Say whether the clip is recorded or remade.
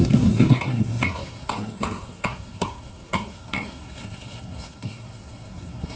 remade